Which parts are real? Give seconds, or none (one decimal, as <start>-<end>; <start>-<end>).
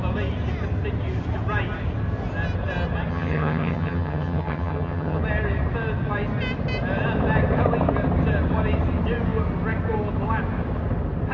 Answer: 0.0-3.1; 5.2-11.3